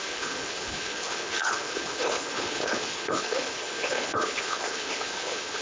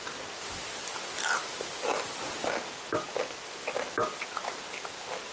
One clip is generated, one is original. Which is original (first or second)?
second